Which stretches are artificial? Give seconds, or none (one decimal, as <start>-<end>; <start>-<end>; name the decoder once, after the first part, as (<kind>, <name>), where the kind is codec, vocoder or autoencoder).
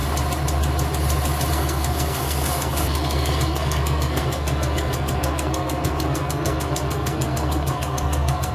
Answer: 1.5-8.5 (codec, SNAC)